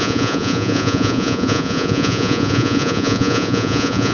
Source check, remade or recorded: remade